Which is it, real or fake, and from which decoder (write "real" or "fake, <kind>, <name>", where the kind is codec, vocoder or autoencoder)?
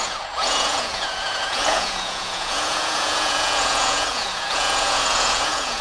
fake, vocoder, Vocos